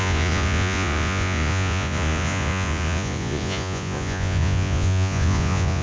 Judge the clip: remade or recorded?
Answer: remade